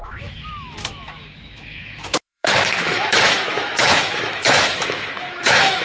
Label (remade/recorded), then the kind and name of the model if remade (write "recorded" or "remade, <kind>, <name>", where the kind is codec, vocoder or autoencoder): remade, autoencoder, DAC-VAE